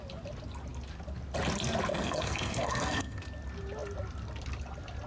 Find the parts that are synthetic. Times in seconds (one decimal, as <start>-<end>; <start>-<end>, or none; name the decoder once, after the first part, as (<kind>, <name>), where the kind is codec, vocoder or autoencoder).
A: 1.9-3.2 (codec, SNAC)